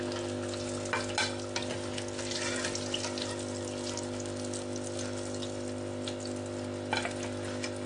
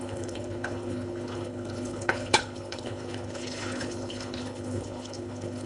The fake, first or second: second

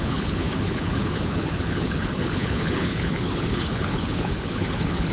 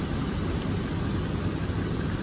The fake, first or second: first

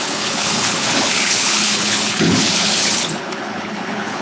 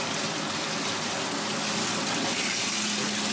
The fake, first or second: first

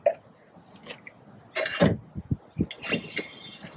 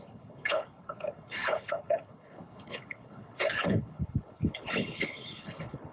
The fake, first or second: second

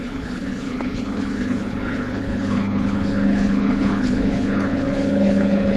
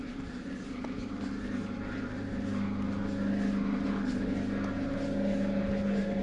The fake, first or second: first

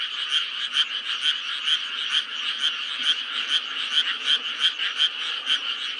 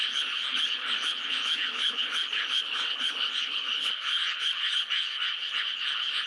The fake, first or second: second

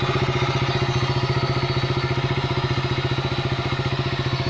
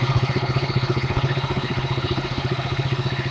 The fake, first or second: second